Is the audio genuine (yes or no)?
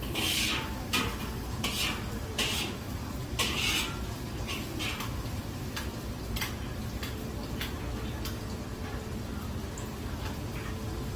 no